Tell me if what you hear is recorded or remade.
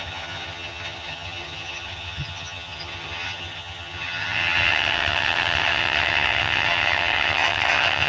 remade